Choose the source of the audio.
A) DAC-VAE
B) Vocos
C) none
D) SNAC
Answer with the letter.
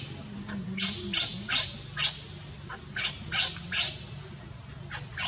C